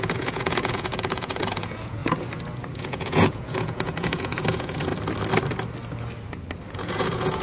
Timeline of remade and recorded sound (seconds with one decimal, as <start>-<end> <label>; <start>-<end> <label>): 0.0-2.0 remade; 2.0-2.7 recorded; 2.7-4.9 remade; 4.9-6.7 recorded; 6.7-7.4 remade